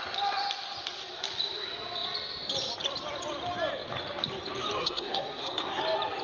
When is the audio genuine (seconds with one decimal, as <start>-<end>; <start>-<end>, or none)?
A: 0.0-4.8; 5.8-6.2